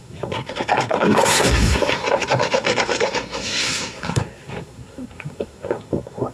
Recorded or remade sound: remade